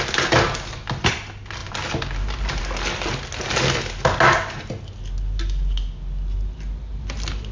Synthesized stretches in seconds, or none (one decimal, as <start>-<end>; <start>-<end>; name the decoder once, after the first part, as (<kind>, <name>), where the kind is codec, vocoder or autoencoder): none